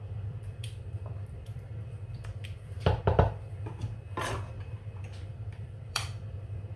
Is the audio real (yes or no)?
no